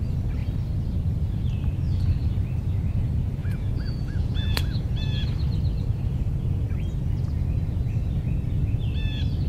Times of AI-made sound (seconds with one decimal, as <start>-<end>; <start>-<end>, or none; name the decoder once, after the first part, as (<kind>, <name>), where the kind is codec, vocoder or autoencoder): 3.4-4.6 (vocoder, Vocos)